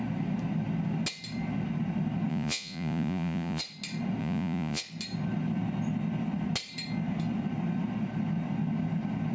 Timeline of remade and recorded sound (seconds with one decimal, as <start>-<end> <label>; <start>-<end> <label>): 0.0-2.3 recorded; 2.3-3.6 remade; 3.6-4.2 recorded; 4.2-4.8 remade; 4.8-9.3 recorded